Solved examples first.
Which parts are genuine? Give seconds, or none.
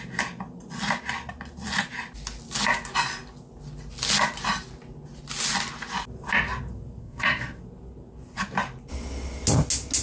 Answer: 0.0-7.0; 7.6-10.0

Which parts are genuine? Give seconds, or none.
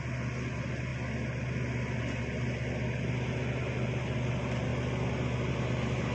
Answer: 0.0-6.1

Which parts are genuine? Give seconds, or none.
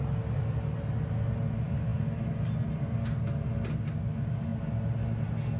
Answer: 0.0-5.6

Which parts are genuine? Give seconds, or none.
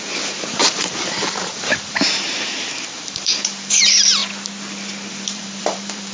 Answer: 4.2-5.1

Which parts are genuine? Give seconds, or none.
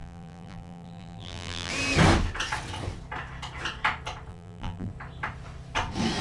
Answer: 1.7-4.3; 4.9-6.2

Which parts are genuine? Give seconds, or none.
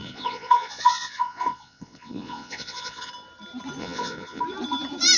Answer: 3.1-3.8; 4.4-5.2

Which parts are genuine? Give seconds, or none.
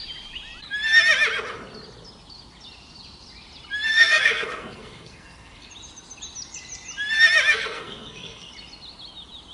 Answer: 0.0-3.9; 5.7-7.5; 8.5-9.5